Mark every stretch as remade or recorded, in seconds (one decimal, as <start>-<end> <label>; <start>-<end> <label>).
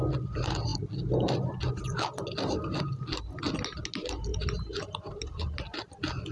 0.0-4.3 recorded; 4.3-5.4 remade; 5.4-6.3 recorded